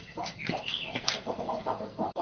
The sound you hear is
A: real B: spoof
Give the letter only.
B